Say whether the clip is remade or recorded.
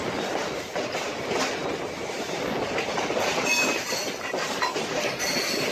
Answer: recorded